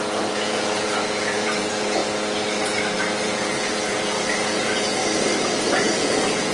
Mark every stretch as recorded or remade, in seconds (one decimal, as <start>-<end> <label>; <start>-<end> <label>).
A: 0.0-2.0 remade; 2.0-3.2 recorded; 3.2-5.0 remade; 5.0-5.7 recorded; 5.7-6.5 remade